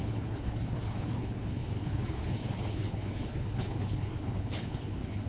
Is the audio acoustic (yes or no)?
no